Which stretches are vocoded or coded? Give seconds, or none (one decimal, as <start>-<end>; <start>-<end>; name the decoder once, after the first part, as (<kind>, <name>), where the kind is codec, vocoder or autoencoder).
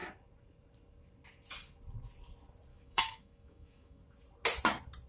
2.7-4.0 (autoencoder, DAC-VAE)